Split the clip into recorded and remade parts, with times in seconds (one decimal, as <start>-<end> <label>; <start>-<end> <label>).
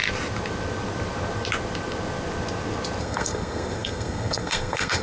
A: 0.0-3.0 recorded; 3.0-5.0 remade